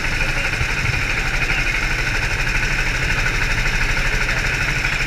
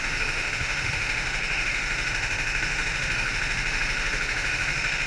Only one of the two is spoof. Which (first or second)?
second